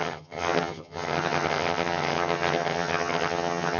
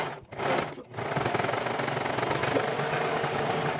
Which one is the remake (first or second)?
first